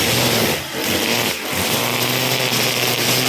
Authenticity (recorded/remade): recorded